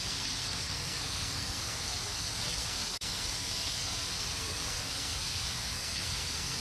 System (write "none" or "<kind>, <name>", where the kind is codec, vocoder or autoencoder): codec, SNAC